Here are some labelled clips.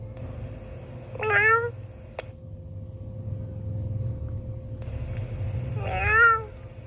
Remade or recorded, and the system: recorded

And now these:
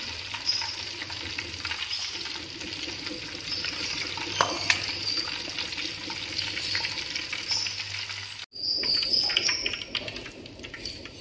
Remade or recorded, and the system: recorded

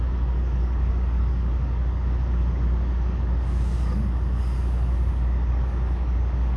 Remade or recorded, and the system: remade, codec, DAC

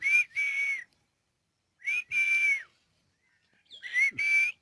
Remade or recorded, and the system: recorded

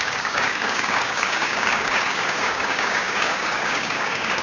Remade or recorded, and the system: remade, codec, DAC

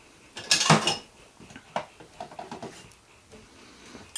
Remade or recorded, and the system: recorded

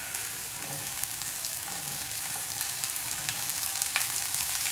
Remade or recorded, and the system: remade, codec, DAC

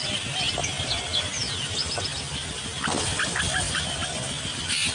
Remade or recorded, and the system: recorded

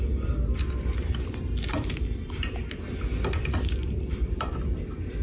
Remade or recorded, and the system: recorded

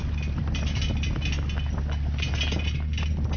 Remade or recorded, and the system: recorded